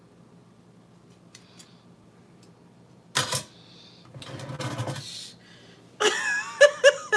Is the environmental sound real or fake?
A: real